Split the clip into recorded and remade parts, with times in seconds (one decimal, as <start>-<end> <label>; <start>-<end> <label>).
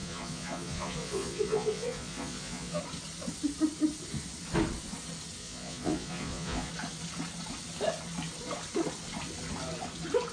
0.0-2.8 remade; 2.8-5.4 recorded; 5.4-6.7 remade; 6.7-10.3 recorded